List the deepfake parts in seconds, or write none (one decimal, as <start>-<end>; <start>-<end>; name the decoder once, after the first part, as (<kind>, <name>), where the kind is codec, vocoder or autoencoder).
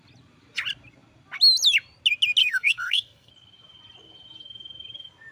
2.4-3.3 (codec, SNAC)